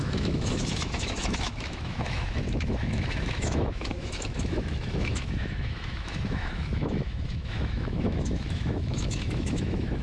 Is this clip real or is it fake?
fake